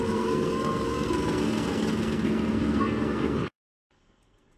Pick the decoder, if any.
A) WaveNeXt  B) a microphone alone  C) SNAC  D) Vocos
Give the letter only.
C